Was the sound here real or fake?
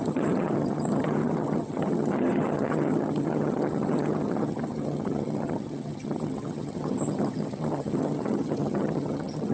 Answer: fake